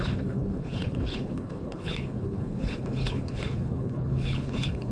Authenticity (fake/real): fake